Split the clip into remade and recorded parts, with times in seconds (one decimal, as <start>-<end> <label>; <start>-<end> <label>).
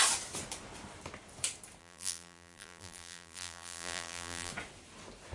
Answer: 0.0-1.8 recorded; 1.8-4.5 remade; 4.5-5.3 recorded